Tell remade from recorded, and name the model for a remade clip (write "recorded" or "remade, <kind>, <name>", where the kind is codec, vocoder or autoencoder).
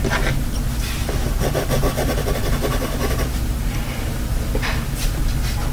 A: recorded